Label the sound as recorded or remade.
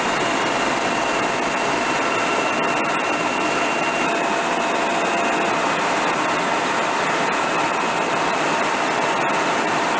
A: recorded